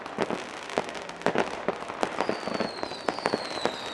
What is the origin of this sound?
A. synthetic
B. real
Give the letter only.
B